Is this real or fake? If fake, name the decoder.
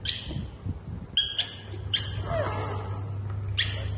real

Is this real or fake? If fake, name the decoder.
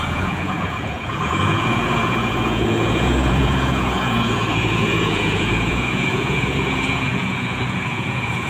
fake, vocoder, Vocos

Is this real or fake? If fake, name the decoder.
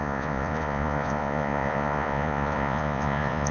fake, vocoder, Vocos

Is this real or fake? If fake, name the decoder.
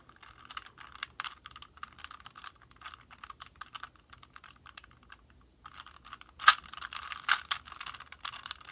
real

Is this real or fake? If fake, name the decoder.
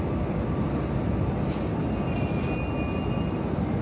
real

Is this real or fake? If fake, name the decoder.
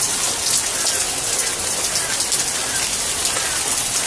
real